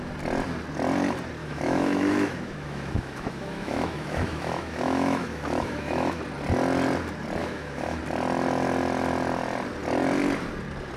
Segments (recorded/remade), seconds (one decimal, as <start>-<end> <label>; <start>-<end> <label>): 0.0-1.4 recorded; 1.4-6.2 remade; 6.2-7.4 recorded; 7.4-8.0 remade; 8.0-11.0 recorded